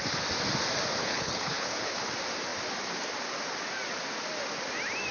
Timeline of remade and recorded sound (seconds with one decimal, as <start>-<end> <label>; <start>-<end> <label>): 0.0-1.0 recorded; 1.0-2.0 remade; 2.0-5.1 recorded